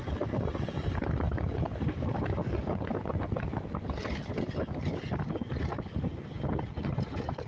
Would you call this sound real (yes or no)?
yes